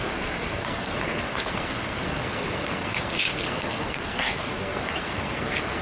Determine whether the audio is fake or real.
fake